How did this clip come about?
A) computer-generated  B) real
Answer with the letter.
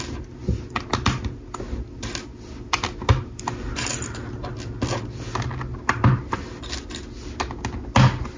B